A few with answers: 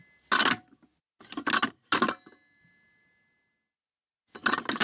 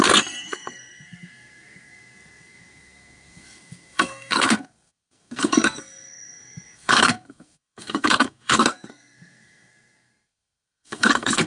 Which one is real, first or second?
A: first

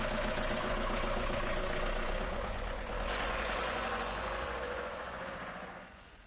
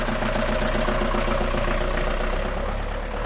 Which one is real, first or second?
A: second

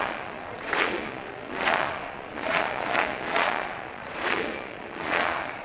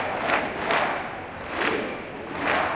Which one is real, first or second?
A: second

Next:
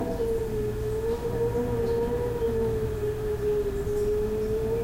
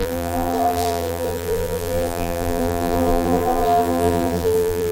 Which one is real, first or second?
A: first